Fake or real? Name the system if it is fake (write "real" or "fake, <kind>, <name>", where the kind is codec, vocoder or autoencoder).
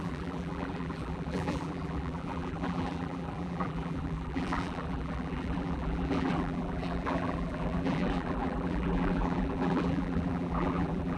fake, vocoder, BigVGAN v2